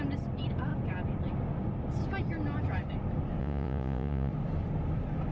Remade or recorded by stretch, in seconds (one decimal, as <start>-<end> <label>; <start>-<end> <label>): 0.0-3.4 recorded; 3.4-4.3 remade; 4.3-5.3 recorded